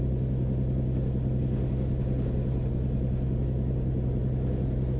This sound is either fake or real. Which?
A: real